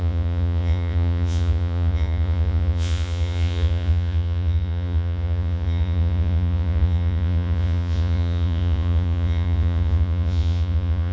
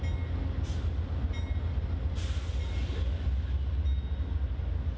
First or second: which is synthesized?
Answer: first